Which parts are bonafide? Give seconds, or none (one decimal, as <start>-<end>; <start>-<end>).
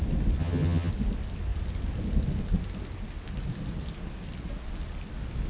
0.0-0.4; 0.9-5.5